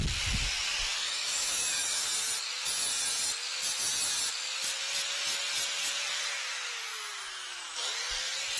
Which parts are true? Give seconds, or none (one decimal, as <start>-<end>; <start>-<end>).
0.0-1.0; 2.0-6.9; 7.9-8.6